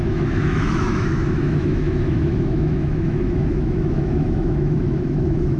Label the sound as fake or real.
fake